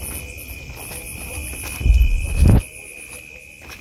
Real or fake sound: real